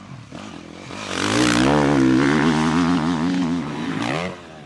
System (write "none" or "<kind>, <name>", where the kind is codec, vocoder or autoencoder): none